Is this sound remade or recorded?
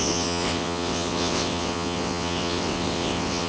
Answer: remade